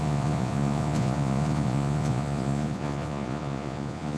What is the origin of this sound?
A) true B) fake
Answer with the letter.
B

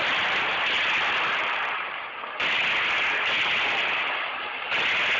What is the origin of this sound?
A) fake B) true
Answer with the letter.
B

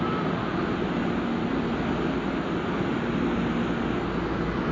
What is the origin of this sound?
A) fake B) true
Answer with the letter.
B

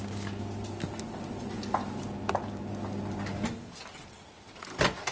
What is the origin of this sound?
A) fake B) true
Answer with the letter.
B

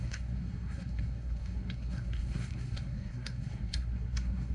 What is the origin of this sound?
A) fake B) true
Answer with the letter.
A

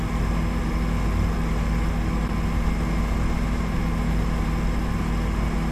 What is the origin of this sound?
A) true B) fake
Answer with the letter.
A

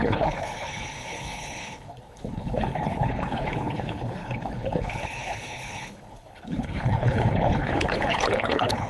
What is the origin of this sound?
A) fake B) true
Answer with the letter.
A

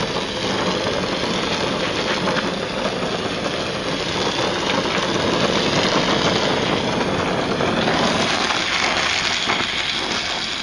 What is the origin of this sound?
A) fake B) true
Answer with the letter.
B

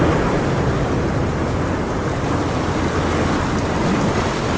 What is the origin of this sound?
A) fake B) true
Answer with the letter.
B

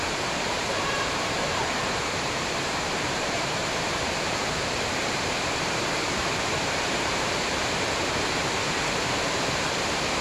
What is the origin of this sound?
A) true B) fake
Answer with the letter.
B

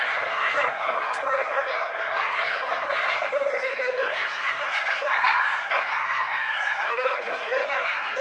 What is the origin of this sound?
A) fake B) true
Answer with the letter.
A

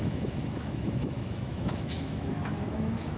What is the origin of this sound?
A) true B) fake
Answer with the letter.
B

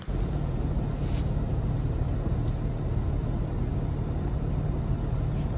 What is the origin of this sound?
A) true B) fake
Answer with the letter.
A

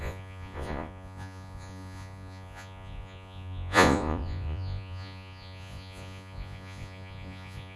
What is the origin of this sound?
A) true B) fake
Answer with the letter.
B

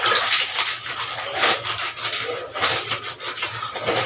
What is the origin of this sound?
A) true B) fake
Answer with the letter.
A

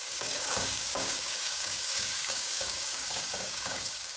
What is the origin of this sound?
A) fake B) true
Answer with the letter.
A